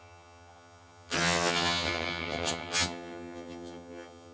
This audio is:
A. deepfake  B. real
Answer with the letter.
A